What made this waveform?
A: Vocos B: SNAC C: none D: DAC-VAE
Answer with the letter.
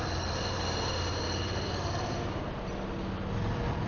C